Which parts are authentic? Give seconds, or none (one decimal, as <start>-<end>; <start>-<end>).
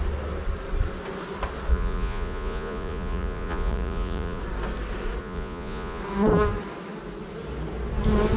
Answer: 0.0-1.7; 4.4-5.2; 6.0-8.4